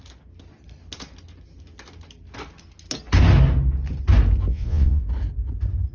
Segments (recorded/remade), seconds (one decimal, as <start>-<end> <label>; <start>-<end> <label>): 0.0-4.5 recorded; 4.5-5.0 remade; 5.0-5.9 recorded